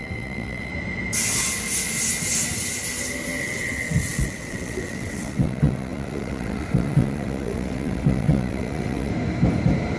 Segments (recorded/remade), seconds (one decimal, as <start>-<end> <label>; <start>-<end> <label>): 0.0-0.7 remade; 0.7-3.4 recorded; 3.4-9.1 remade; 9.1-10.0 recorded

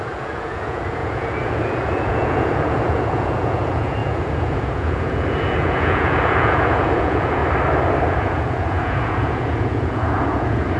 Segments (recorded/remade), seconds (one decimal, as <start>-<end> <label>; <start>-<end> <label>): 0.0-7.4 remade; 7.4-8.0 recorded; 8.0-10.8 remade

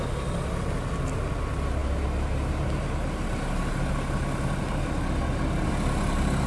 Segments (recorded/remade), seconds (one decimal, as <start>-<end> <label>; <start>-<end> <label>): 0.0-6.5 recorded

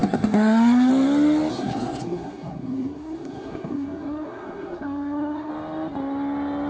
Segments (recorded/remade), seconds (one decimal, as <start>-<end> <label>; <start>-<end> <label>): 0.0-0.9 remade; 0.9-1.5 recorded; 1.5-5.5 remade; 5.5-6.7 recorded